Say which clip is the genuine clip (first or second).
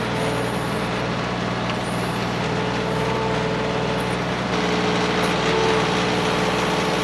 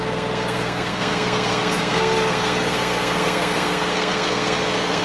first